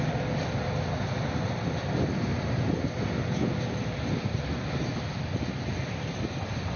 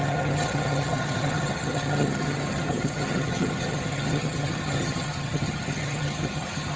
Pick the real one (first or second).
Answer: first